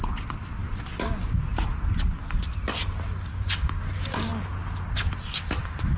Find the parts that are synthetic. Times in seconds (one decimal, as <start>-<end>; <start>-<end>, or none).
3.3-3.8